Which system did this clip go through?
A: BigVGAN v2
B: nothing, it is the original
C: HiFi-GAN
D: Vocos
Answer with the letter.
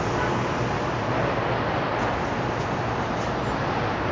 B